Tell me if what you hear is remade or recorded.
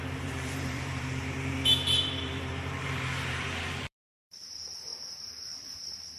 remade